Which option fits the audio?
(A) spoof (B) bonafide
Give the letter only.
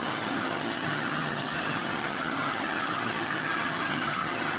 A